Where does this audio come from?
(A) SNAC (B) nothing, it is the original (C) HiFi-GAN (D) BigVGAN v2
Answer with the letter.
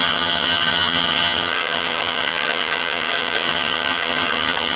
C